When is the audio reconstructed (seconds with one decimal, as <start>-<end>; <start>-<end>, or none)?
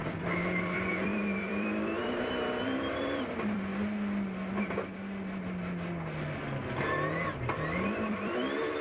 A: 0.0-3.7; 7.4-8.8